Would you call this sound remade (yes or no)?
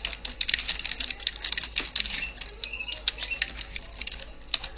no